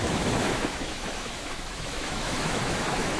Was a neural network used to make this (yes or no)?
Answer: yes